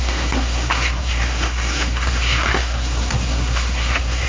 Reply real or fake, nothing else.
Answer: fake